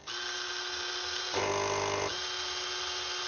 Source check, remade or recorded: recorded